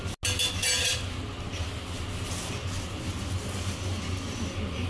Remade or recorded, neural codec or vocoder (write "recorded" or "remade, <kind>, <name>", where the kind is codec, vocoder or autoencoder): recorded